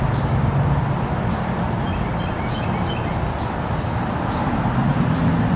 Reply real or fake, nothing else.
real